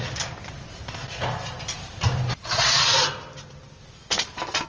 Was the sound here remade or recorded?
recorded